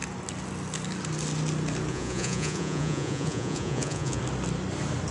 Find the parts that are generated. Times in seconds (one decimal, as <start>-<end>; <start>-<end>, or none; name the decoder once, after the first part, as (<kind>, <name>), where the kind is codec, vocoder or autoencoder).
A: 1.9-4.2 (vocoder, Vocos)